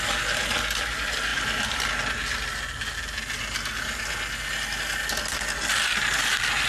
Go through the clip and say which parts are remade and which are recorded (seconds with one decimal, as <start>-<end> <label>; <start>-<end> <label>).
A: 0.0-6.7 recorded